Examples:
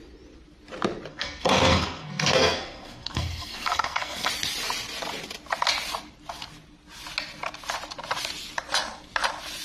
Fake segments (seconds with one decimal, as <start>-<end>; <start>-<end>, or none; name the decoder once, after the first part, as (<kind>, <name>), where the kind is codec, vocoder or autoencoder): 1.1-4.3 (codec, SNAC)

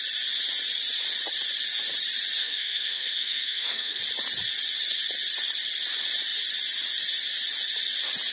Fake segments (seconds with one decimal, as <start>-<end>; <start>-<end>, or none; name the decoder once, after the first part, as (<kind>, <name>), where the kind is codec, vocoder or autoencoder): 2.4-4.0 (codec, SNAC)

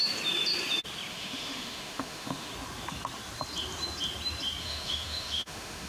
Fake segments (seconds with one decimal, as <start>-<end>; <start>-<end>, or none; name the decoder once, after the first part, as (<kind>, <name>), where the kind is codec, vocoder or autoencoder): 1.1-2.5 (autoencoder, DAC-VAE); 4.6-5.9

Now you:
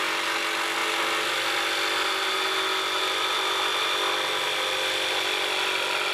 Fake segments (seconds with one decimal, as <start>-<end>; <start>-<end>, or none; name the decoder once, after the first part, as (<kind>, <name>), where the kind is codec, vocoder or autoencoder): none

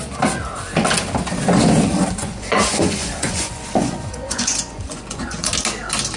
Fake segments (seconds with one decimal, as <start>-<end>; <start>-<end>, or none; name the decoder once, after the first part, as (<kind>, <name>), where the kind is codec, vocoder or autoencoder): 2.2-5.5 (vocoder, Vocos)

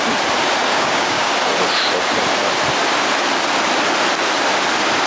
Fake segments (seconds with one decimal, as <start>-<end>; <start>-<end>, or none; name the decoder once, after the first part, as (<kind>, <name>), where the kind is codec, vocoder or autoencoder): 0.7-1.3 (codec, DAC)

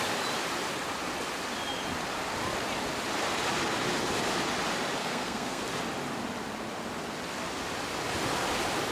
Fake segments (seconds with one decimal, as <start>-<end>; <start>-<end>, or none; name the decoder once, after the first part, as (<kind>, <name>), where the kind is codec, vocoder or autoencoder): 5.0-5.6 (codec, SNAC)

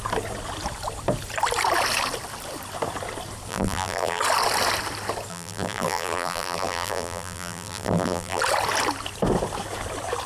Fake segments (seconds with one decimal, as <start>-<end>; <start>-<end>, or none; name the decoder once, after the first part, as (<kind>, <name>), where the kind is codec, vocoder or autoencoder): 3.5-4.2 (vocoder, BigVGAN v2); 5.3-8.4